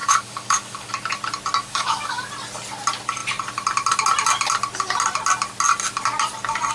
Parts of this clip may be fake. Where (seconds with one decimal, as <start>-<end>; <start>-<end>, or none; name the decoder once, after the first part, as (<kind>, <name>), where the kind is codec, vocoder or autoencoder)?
0.0-0.9 (codec, DAC); 1.6-2.3